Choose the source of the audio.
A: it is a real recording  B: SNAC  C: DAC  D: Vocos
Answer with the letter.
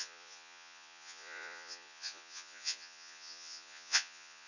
D